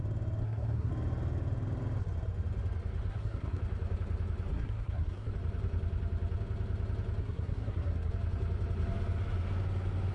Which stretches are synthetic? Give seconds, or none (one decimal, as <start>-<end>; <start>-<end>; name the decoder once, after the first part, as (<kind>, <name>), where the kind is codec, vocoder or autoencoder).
0.4-0.9 (codec, SNAC); 3.1-3.6; 4.5-5.3; 7.2-8.1